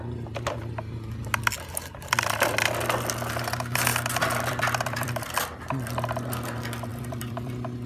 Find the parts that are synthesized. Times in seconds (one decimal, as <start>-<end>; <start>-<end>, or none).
3.9-5.1; 6.9-7.5